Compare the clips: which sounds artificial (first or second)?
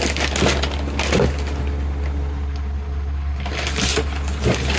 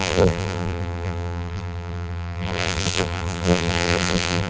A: second